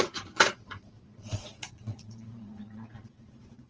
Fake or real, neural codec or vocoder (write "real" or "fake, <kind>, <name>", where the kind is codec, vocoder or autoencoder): fake, vocoder, Vocos